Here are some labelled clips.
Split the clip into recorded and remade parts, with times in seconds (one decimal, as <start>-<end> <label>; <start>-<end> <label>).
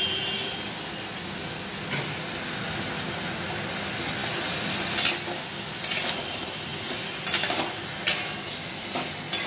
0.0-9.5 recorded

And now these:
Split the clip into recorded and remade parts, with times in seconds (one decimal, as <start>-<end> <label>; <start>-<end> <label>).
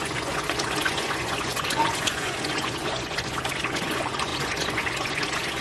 0.0-5.6 remade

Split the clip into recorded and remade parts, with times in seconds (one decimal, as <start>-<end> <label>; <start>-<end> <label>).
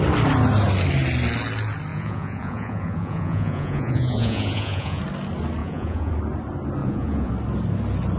0.0-1.9 recorded; 1.9-5.0 remade; 5.0-5.6 recorded; 5.6-6.1 remade; 6.1-6.8 recorded; 6.8-7.3 remade; 7.3-8.2 recorded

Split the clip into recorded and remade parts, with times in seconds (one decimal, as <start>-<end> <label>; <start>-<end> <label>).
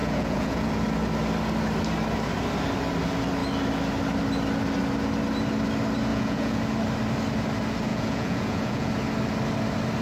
0.0-0.7 remade; 0.7-6.1 recorded; 6.1-6.6 remade; 6.6-7.9 recorded; 7.9-8.9 remade; 8.9-10.0 recorded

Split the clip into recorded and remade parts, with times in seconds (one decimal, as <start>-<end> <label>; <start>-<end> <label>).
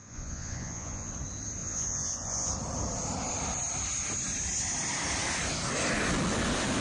0.0-1.1 remade; 1.1-1.6 recorded; 1.6-2.5 remade; 2.5-6.8 recorded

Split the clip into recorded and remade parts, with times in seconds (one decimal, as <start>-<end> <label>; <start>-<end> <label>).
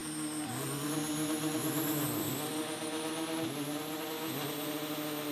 0.0-5.3 recorded